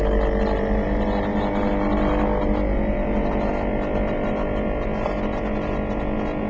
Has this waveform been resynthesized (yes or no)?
no